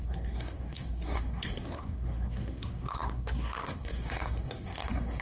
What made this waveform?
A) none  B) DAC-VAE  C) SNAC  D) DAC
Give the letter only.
C